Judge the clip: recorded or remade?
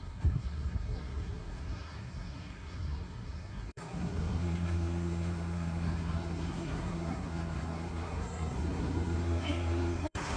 remade